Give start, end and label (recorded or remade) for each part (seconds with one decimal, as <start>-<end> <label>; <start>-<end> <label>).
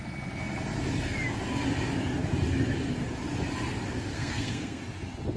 0.0-4.1 recorded; 4.1-4.8 remade; 4.8-5.4 recorded